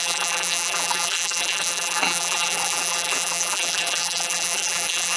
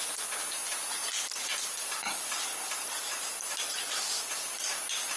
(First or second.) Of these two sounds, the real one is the second